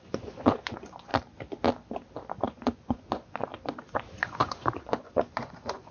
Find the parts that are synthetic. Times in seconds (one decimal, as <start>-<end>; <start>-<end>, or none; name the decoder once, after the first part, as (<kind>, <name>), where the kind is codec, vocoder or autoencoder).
0.0-1.1 (vocoder, Vocos); 2.4-3.5; 4.2-5.9